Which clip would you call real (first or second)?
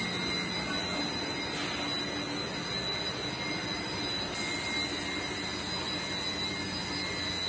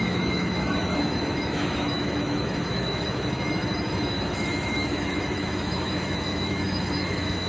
first